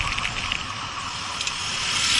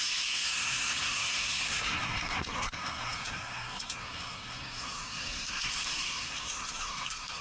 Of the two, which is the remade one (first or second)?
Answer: second